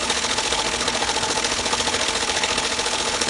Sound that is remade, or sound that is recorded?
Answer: remade